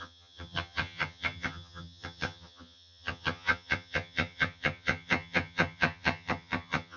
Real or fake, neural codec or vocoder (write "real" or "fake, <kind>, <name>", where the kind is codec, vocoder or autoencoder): fake, vocoder, HiFi-GAN